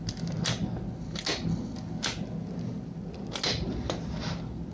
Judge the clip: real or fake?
real